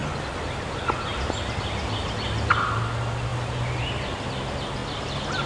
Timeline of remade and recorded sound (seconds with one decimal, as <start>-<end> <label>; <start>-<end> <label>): 0.0-4.8 recorded; 4.8-5.5 remade